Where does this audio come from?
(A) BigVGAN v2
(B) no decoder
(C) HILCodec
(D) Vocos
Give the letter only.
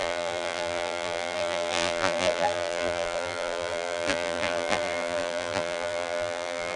A